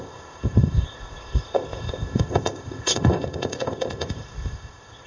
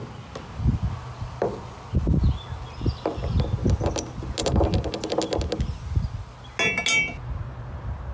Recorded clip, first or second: second